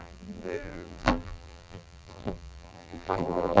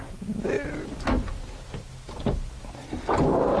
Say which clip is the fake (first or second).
first